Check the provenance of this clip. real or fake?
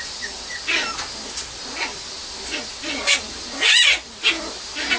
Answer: real